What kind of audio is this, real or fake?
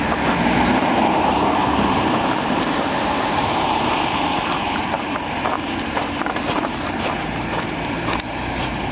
fake